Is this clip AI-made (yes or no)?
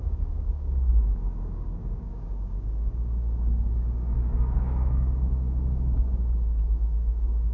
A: yes